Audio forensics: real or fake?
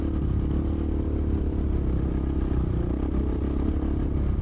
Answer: real